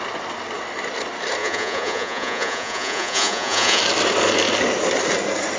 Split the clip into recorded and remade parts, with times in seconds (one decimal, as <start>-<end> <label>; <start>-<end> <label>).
0.0-1.4 recorded; 1.4-3.8 remade; 3.8-5.6 recorded